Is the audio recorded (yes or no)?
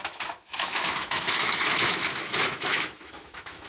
no